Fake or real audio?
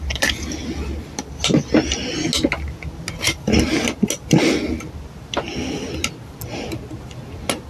real